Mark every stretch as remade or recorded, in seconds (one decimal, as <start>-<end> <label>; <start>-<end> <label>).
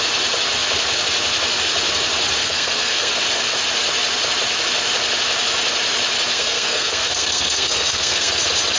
0.0-2.4 recorded; 2.4-3.1 remade; 3.1-6.3 recorded; 6.3-8.3 remade; 8.3-8.8 recorded